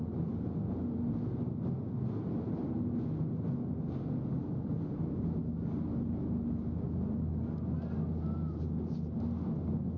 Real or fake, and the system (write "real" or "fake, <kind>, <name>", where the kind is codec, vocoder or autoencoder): real